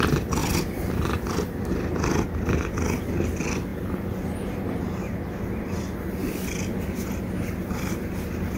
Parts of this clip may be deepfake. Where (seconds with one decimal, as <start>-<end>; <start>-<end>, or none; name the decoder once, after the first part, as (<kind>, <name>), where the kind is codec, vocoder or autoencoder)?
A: 0.4-1.7 (vocoder, BigVGAN v2); 3.7-7.9